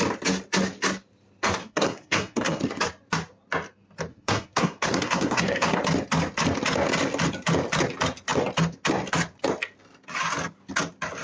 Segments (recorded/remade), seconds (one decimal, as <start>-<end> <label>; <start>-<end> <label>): 0.0-1.6 recorded; 1.6-2.6 remade; 2.6-4.1 recorded; 4.1-5.8 remade; 5.8-11.2 recorded